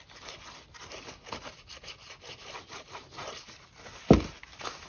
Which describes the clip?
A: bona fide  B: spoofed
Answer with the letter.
A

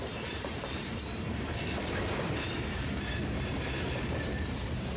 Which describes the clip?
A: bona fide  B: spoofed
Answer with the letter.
B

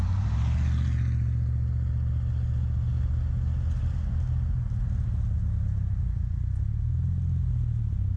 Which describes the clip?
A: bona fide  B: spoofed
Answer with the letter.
A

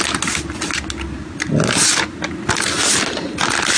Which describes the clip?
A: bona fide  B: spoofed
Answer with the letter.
A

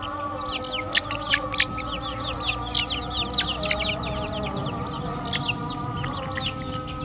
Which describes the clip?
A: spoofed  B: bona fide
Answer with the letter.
B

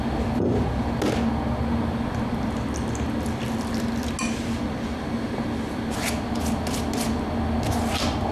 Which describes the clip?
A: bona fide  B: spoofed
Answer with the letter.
A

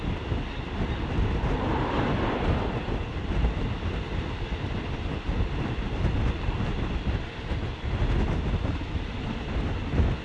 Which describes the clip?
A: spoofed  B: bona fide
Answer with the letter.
B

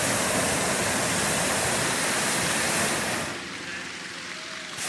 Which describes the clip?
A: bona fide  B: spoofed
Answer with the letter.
B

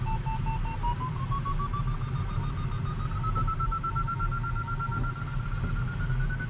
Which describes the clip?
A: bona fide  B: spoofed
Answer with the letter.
A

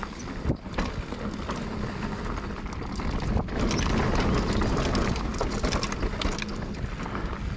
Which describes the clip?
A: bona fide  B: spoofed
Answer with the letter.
A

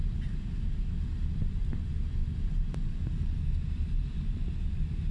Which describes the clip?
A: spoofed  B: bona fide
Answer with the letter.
B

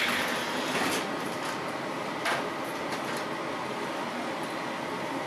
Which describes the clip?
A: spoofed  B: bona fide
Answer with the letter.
B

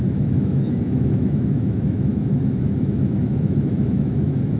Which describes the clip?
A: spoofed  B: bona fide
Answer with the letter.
A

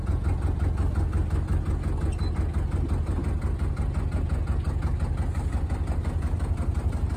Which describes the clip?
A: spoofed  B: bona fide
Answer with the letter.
B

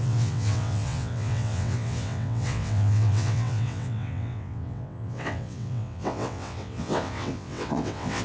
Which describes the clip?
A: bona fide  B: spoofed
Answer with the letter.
B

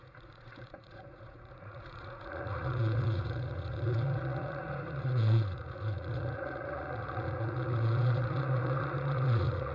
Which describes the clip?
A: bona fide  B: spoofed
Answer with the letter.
B